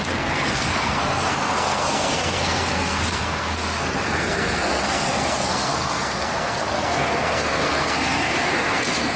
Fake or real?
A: fake